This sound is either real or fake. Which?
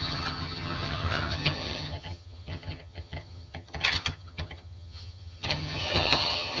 fake